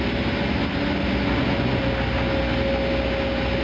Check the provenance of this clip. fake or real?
real